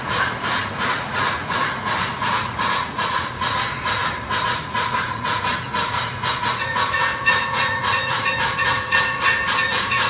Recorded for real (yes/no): no